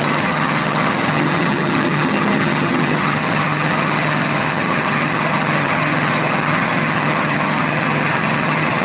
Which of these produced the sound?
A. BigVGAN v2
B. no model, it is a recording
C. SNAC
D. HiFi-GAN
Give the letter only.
D